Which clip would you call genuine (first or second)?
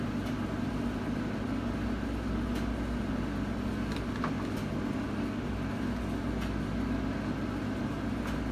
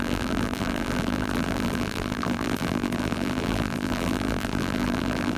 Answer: first